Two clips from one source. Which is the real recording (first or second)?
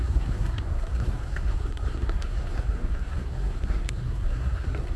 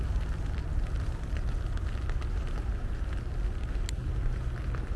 second